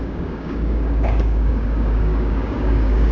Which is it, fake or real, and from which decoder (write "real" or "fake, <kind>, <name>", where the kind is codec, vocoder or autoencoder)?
fake, codec, DAC